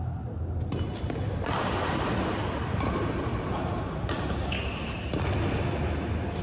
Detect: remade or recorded recorded